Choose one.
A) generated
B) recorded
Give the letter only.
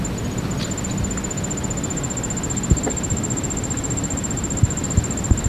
B